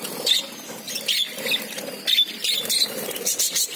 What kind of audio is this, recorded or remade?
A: recorded